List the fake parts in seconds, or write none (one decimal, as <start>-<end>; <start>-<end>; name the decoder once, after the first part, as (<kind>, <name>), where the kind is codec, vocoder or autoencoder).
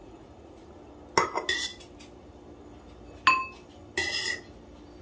0.0-0.7 (vocoder, Vocos)